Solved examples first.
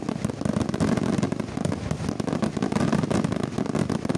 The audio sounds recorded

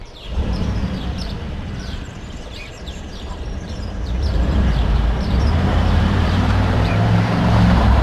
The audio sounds remade